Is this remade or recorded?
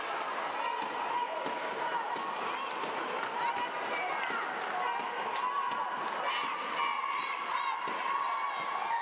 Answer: recorded